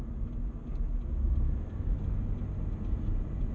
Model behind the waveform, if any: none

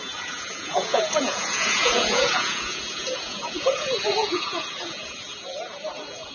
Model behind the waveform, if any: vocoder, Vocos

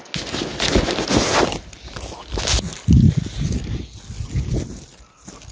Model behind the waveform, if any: none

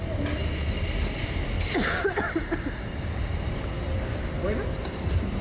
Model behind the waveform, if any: none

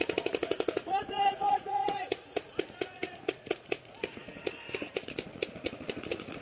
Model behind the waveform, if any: vocoder, Vocos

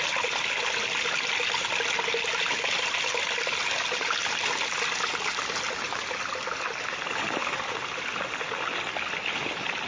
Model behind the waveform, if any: none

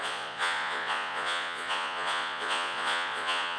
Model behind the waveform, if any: vocoder, Vocos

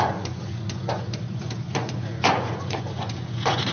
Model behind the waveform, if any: vocoder, Vocos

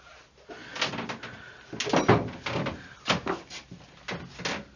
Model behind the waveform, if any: none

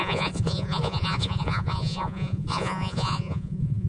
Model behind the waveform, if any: vocoder, Vocos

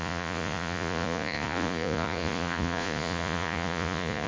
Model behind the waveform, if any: vocoder, Vocos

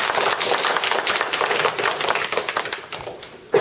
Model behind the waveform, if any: none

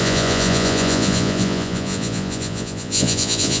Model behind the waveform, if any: vocoder, Vocos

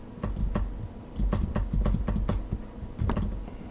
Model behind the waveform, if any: none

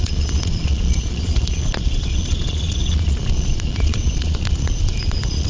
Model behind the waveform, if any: vocoder, Vocos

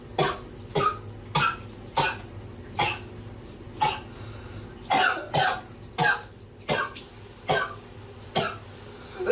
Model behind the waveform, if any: none